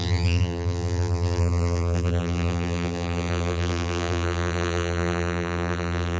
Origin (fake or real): fake